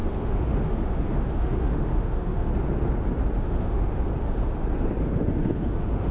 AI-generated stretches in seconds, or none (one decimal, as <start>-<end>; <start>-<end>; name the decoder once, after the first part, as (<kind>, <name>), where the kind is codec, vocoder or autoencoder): 0.0-2.5 (autoencoder, DAC-VAE); 3.4-4.1; 5.0-6.1